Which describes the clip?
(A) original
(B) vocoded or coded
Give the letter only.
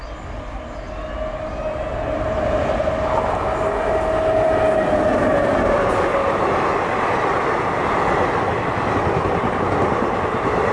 A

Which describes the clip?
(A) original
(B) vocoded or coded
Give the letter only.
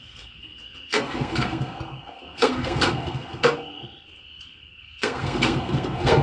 B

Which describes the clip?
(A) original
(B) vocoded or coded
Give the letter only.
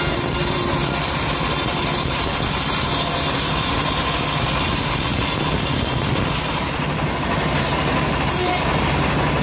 A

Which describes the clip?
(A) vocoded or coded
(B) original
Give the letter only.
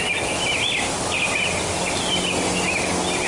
B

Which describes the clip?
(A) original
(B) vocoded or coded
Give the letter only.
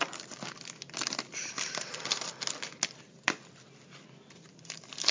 A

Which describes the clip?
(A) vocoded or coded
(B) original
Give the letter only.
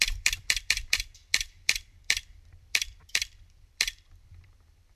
A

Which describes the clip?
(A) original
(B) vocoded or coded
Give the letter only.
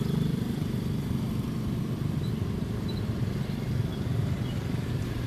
B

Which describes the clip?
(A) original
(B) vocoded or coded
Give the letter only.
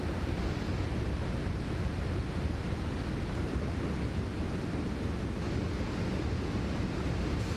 A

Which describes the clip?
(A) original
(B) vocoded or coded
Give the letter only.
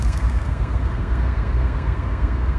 B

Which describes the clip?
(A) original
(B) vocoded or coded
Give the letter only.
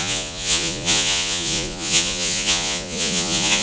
B